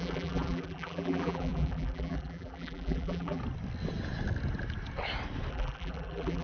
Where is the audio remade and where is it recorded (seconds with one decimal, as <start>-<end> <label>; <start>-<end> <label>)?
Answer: 0.0-3.4 remade; 3.4-5.5 recorded; 5.5-6.4 remade